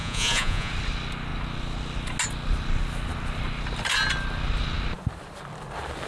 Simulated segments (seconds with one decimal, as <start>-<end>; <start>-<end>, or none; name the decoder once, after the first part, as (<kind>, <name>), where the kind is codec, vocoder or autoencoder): 0.0-0.7 (vocoder, Vocos)